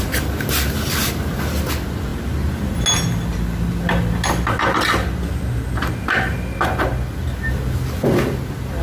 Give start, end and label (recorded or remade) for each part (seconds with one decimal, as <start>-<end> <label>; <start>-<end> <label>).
0.0-8.8 recorded